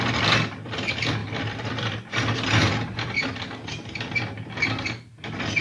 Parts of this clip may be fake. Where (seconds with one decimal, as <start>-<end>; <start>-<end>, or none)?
none